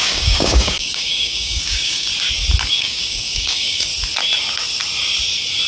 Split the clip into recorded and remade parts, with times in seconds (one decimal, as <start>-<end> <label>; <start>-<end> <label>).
0.0-2.1 remade; 2.1-2.7 recorded; 2.7-3.9 remade; 3.9-5.7 recorded

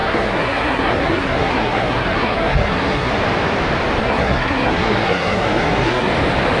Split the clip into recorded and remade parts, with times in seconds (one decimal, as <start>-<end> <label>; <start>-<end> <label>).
0.0-3.1 remade; 3.1-4.0 recorded; 4.0-6.1 remade; 6.1-6.6 recorded

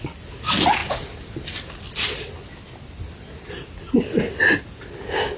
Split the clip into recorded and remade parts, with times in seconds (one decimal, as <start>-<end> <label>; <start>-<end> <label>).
0.0-5.4 recorded

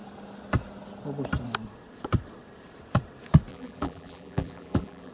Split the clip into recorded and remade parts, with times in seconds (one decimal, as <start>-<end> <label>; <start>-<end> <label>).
0.0-3.5 recorded; 3.5-5.1 remade